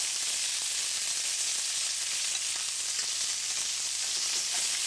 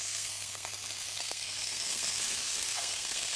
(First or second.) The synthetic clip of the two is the second